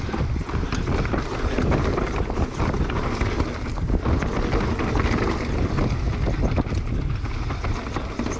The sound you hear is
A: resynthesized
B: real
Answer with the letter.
B